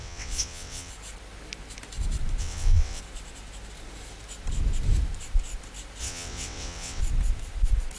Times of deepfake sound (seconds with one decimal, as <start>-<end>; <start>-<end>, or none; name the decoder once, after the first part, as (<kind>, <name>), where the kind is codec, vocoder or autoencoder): 0.0-0.9 (vocoder, WaveNeXt); 2.4-3.0; 6.0-7.0